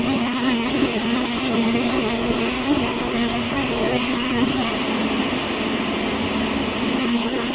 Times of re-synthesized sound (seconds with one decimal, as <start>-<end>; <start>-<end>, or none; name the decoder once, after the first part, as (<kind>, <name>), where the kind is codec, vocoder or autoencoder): 0.0-4.7 (codec, SNAC); 7.0-7.5